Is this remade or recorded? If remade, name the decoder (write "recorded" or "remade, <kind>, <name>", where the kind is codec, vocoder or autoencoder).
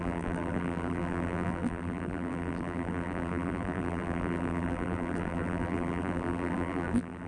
remade, vocoder, BigVGAN v2